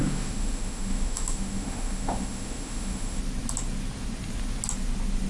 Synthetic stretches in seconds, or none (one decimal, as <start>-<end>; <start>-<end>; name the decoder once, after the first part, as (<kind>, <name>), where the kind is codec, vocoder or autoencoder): 0.0-3.2 (autoencoder, DAC-VAE)